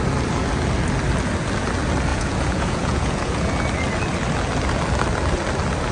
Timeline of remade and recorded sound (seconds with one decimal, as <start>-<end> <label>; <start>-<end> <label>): 0.0-2.1 recorded; 2.1-3.5 remade; 3.5-5.9 recorded